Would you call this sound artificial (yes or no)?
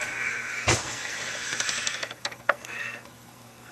yes